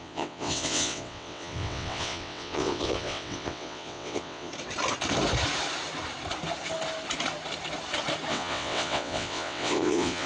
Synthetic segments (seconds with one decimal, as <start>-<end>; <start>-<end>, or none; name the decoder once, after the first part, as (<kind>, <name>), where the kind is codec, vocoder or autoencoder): 0.0-4.5 (vocoder, WaveNeXt); 8.3-10.3